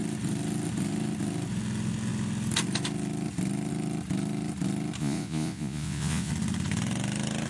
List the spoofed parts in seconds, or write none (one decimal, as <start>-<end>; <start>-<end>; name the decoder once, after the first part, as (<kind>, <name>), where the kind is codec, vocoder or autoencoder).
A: 5.0-6.3 (vocoder, Vocos)